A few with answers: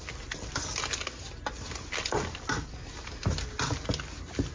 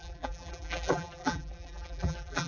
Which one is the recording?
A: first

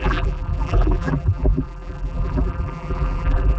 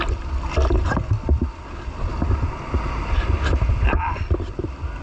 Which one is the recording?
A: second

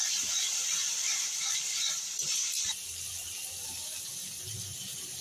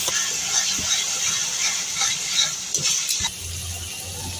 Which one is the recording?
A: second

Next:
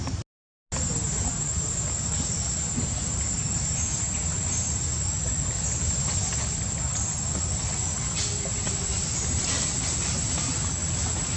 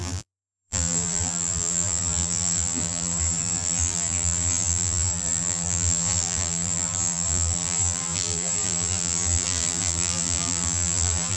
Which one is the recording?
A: first